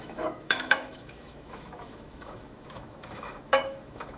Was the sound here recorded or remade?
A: remade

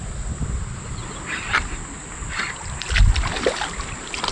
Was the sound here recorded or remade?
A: recorded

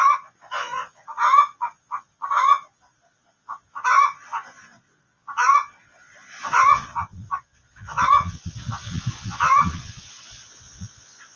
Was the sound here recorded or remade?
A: remade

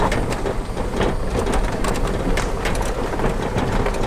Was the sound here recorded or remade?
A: recorded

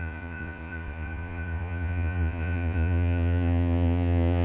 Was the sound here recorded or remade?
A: remade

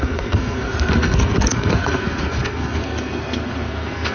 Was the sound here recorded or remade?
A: remade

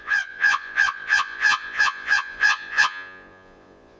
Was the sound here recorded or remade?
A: remade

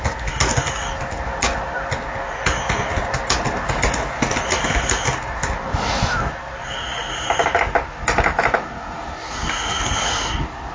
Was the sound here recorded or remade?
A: recorded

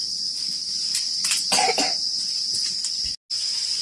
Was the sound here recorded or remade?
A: recorded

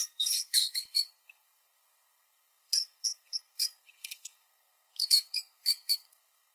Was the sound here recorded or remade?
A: remade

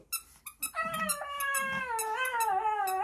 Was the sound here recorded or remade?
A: recorded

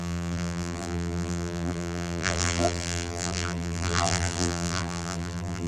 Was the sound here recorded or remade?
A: remade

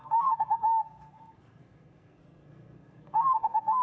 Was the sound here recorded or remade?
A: remade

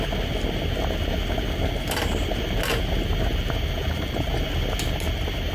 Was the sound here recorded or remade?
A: recorded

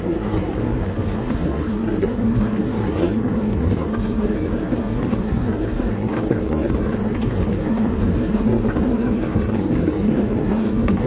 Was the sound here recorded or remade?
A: remade